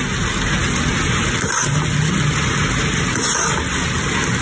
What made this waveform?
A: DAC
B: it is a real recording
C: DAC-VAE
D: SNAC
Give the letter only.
B